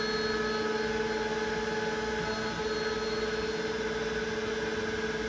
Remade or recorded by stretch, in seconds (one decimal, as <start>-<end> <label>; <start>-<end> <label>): 0.0-5.3 recorded